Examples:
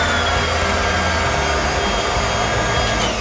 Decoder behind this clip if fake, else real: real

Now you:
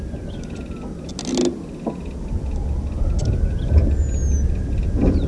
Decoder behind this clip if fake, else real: real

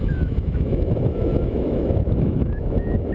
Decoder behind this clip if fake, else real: fake, autoencoder, DAC-VAE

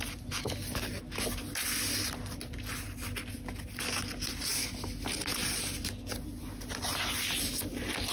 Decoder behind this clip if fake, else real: real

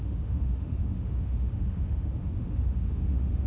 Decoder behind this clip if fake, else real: fake, autoencoder, DAC-VAE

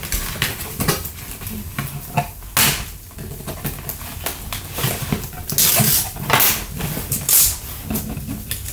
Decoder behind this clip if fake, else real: real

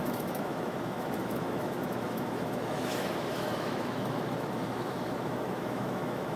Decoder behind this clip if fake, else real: fake, autoencoder, DAC-VAE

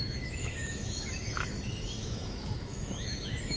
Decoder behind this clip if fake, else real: fake, autoencoder, DAC-VAE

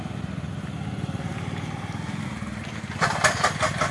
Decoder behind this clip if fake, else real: real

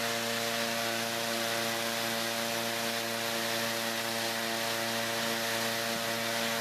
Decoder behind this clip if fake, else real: real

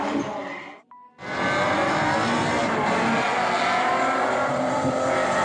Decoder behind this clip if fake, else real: real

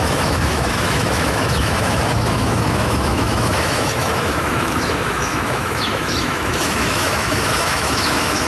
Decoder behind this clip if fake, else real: fake, autoencoder, DAC-VAE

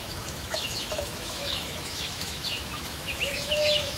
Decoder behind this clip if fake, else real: fake, autoencoder, DAC-VAE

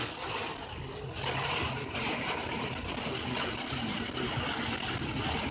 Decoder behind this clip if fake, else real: real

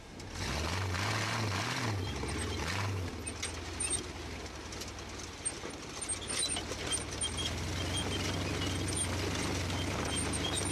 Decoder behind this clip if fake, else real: real